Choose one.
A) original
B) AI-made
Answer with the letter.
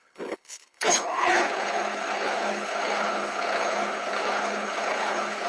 B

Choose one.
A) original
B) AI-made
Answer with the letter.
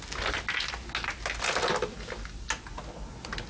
A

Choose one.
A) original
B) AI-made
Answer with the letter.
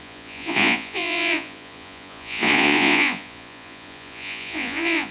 B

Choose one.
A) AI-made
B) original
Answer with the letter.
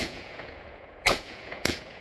A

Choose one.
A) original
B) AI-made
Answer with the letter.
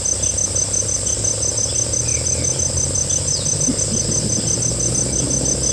A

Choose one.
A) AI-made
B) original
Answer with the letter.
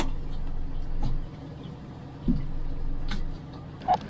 B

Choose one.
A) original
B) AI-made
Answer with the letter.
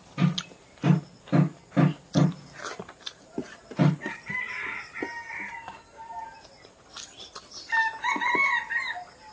A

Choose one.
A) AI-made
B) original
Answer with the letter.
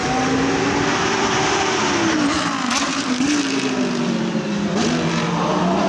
B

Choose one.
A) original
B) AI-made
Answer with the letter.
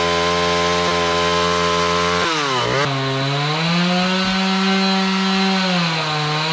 A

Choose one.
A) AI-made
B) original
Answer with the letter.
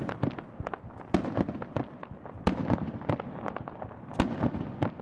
B